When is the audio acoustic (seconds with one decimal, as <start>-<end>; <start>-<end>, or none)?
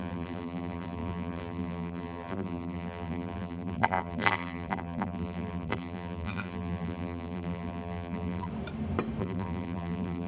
8.5-9.2